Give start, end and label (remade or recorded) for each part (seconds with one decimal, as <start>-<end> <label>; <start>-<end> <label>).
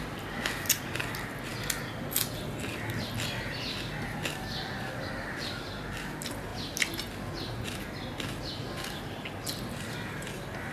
0.0-10.7 recorded